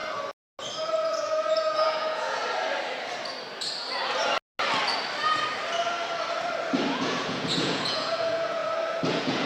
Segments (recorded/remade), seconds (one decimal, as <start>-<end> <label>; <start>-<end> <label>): 0.0-1.5 recorded; 1.5-2.4 remade; 2.4-6.9 recorded; 6.9-8.6 remade; 8.6-9.1 recorded; 9.1-9.5 remade